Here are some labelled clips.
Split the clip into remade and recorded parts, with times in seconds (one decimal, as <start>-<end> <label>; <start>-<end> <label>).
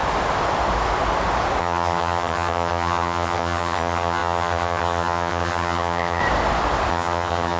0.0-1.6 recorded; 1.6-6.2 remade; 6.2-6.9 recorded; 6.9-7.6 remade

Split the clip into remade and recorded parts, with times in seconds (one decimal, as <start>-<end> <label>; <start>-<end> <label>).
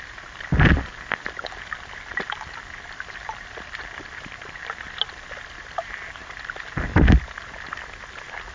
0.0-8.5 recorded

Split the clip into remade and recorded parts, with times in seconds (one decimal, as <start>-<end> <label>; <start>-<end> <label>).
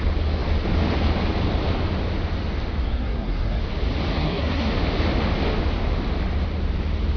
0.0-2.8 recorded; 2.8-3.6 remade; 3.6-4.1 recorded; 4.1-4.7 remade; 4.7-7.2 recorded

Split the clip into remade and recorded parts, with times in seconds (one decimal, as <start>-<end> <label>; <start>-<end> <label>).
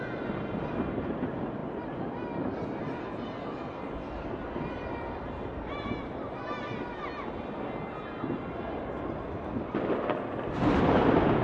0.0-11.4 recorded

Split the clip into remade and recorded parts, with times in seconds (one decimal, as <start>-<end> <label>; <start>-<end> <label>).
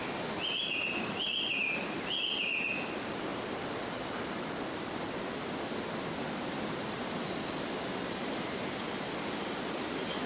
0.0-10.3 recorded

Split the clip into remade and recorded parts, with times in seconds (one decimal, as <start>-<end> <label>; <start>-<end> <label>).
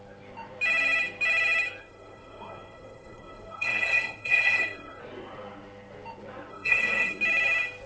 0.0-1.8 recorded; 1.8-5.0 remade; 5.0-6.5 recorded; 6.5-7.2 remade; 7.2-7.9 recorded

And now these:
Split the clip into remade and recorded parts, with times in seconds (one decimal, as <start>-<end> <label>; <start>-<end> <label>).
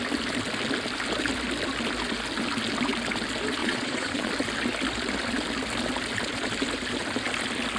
0.0-3.6 recorded; 3.6-4.3 remade; 4.3-7.8 recorded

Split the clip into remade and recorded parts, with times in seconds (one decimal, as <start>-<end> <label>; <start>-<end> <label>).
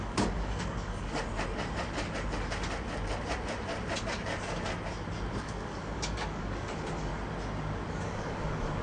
0.0-1.2 remade; 1.2-5.4 recorded; 5.4-7.1 remade; 7.1-7.9 recorded; 7.9-8.8 remade